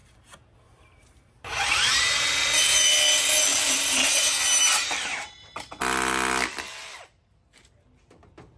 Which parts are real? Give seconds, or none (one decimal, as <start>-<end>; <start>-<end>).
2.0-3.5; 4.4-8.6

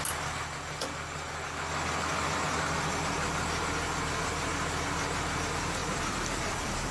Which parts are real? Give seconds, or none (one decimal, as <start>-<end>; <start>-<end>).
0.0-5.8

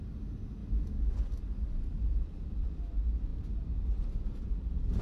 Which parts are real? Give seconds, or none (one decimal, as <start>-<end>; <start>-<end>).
0.0-1.9; 2.7-5.0

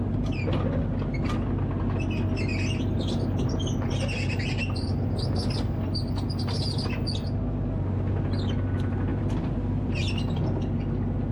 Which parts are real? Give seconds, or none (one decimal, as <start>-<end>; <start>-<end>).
0.0-5.4; 6.4-9.1; 10.4-11.3

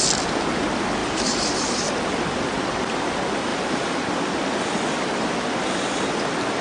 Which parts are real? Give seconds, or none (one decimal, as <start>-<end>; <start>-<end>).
0.0-1.0; 1.9-6.6

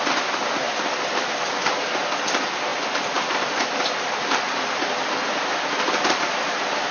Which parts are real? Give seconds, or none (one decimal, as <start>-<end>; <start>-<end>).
0.0-2.7; 4.1-6.9